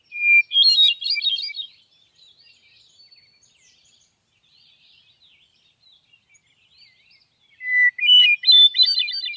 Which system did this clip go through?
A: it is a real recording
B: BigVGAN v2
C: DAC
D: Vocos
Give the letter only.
A